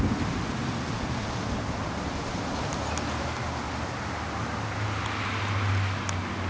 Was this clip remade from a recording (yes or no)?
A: no